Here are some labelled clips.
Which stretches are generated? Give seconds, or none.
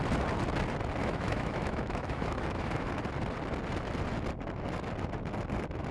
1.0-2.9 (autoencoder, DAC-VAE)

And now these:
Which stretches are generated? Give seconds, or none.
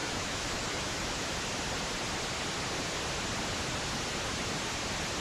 0.0-1.3 (autoencoder, DAC-VAE)